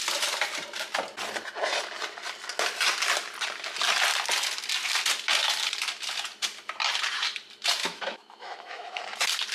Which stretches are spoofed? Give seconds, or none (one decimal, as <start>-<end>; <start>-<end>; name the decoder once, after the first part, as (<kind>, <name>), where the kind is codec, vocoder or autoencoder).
7.8-9.0 (autoencoder, DAC-VAE)